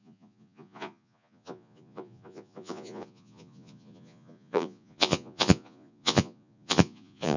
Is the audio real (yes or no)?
no